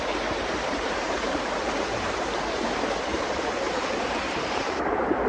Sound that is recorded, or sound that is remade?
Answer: remade